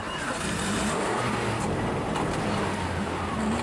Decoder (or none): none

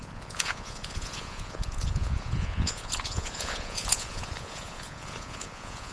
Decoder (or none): vocoder, Vocos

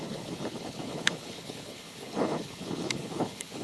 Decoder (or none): codec, HILCodec